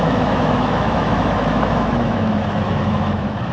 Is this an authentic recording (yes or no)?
no